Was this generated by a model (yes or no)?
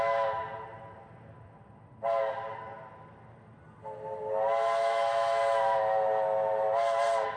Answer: no